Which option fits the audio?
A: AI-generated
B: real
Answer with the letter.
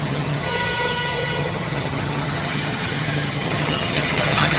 A